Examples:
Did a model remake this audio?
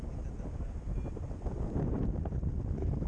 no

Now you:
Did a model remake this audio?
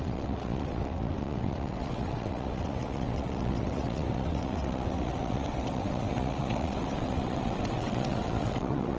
yes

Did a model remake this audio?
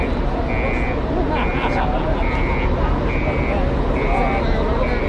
no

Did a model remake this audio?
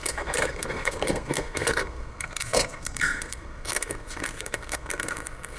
yes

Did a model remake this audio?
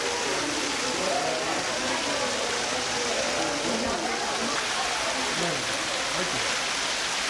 no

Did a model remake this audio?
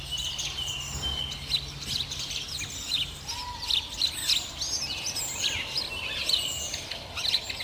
no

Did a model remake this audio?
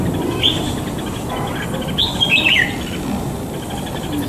no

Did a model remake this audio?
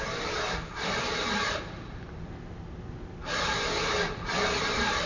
yes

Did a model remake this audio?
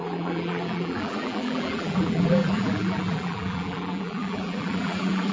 yes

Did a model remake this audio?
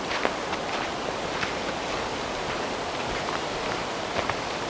no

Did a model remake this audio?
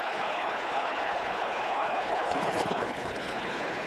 yes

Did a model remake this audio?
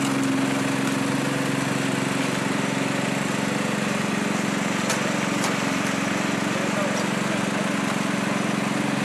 no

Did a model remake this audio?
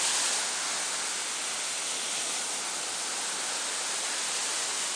no